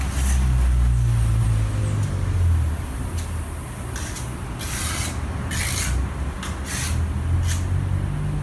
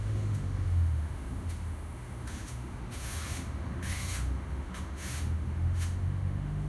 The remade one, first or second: second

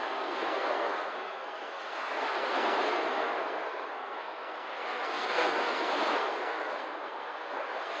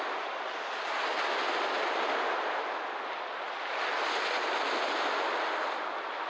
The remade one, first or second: first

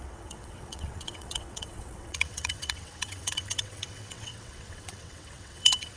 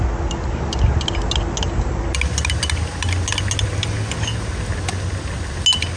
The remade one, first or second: first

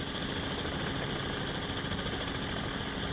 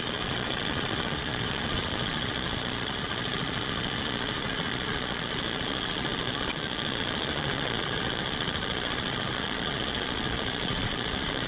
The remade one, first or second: second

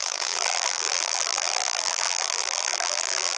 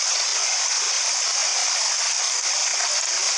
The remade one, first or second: first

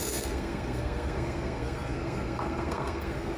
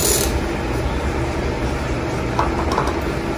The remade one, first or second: first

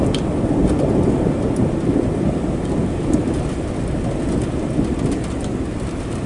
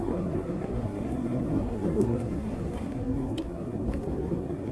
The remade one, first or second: second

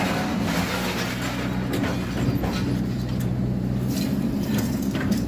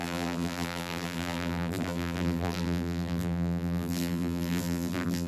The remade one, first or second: second